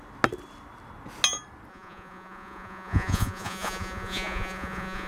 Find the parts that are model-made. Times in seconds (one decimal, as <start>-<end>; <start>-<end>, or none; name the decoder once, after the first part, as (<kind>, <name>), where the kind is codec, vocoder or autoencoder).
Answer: 1.7-5.1 (vocoder, Vocos)